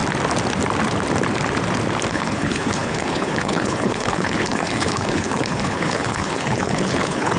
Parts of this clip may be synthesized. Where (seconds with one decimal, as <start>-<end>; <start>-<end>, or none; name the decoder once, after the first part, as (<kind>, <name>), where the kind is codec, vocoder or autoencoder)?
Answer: 2.1-7.4 (codec, HILCodec)